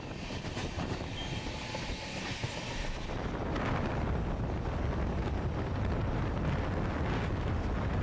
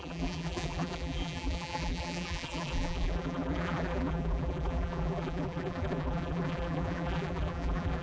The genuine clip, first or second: first